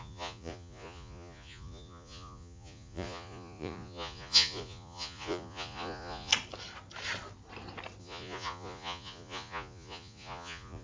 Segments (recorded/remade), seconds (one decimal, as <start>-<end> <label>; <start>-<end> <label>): 0.0-6.3 remade; 6.3-8.0 recorded; 8.0-10.8 remade